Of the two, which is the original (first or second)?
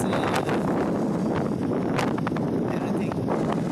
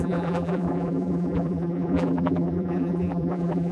first